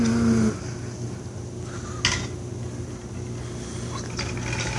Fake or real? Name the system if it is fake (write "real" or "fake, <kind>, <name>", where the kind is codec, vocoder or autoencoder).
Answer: real